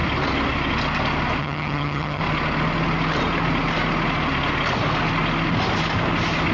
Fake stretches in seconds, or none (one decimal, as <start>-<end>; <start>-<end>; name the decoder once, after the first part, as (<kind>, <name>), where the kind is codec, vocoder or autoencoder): 1.4-2.2 (vocoder, HiFi-GAN)